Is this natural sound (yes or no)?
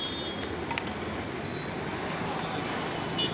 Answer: yes